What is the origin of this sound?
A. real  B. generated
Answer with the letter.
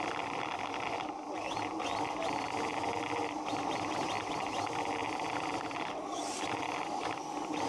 A